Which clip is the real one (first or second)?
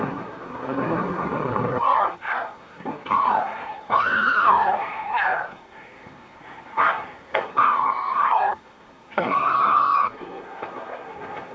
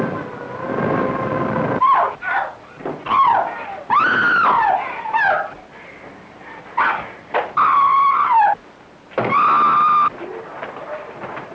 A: second